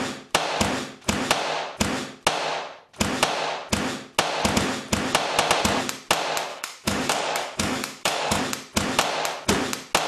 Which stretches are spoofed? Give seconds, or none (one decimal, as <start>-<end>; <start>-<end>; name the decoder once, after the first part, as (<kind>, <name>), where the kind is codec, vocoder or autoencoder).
6.5-8.4 (codec, DAC)